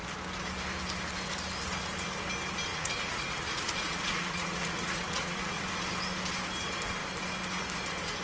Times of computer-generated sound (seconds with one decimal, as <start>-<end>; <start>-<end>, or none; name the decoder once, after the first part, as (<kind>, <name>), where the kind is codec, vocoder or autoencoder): 2.7-5.7 (vocoder, Vocos)